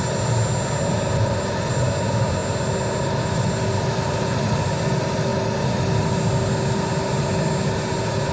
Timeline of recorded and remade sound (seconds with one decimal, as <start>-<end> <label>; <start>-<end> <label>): 0.0-8.3 recorded